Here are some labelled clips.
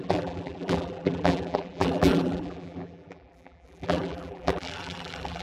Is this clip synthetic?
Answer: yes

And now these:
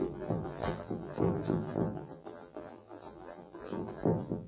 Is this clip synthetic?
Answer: yes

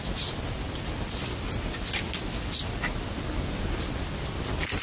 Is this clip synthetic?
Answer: no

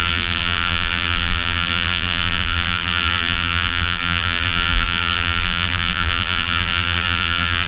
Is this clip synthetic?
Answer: yes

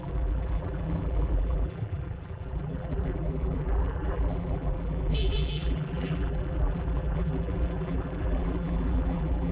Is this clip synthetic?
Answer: yes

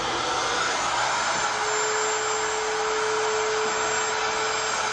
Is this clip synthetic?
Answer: no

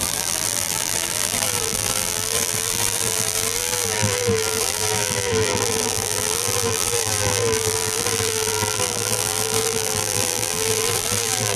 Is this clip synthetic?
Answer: yes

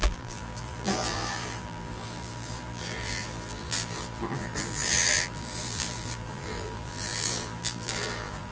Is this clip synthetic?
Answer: yes